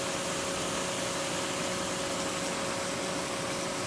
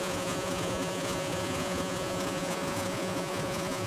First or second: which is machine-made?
second